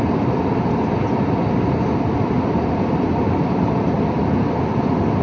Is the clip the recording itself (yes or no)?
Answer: no